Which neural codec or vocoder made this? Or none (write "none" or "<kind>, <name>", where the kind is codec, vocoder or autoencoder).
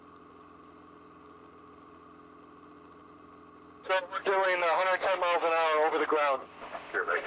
none